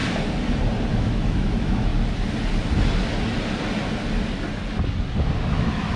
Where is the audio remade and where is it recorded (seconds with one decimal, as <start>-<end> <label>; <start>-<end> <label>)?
0.0-0.9 recorded; 0.9-1.9 remade; 1.9-5.5 recorded; 5.5-6.0 remade